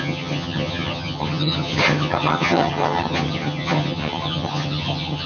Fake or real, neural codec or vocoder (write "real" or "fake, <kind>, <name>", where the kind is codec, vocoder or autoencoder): fake, vocoder, HiFi-GAN